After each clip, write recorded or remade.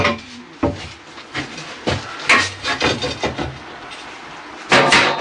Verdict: recorded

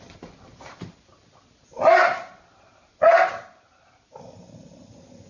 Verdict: recorded